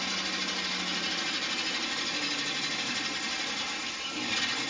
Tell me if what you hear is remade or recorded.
recorded